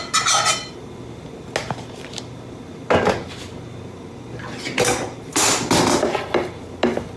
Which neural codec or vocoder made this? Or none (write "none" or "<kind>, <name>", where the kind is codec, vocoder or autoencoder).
none